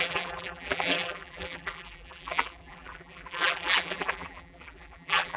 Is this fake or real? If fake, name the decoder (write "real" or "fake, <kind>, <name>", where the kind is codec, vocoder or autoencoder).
fake, vocoder, BigVGAN v2